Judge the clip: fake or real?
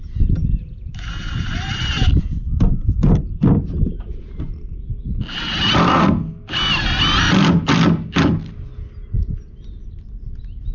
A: real